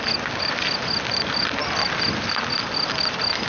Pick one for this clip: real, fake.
real